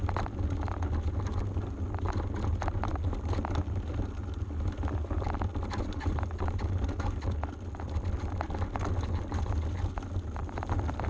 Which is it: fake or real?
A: real